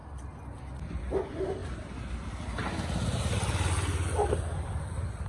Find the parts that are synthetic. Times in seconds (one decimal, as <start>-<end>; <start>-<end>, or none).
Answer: none